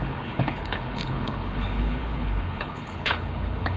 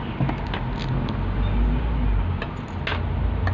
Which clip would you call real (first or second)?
second